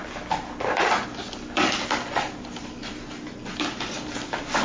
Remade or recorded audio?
recorded